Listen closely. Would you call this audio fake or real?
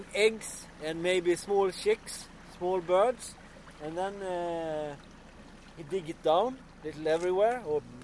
real